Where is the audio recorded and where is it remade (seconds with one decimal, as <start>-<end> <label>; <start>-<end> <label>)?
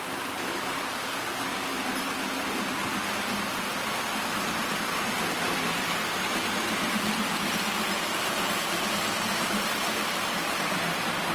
0.0-11.3 recorded